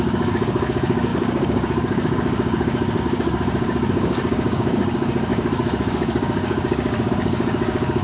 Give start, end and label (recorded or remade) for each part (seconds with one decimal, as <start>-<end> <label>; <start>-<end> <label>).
0.0-8.0 remade